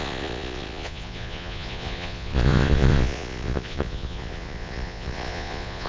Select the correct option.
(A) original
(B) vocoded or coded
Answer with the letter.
B